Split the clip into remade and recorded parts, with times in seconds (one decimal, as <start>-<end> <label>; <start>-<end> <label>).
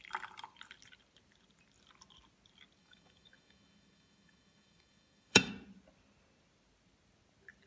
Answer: 0.0-2.8 recorded; 2.8-5.5 remade; 5.5-7.7 recorded